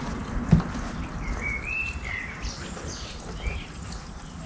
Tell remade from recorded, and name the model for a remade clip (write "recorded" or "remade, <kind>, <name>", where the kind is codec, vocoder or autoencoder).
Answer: recorded